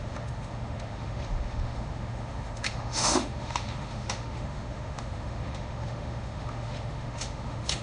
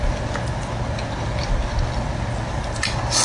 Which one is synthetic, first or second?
first